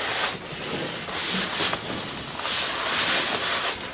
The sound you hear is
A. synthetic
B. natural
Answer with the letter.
B